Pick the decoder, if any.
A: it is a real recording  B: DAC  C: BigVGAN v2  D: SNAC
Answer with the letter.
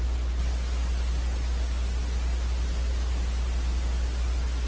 A